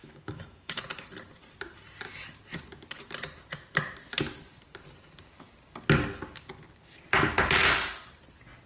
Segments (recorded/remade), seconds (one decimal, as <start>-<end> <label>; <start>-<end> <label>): 0.0-0.8 remade; 0.8-8.7 recorded